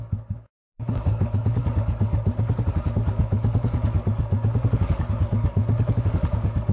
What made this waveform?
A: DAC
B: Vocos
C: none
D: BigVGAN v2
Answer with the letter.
A